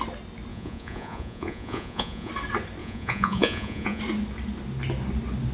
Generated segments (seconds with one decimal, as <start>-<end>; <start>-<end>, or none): 0.5-2.3; 2.8-4.0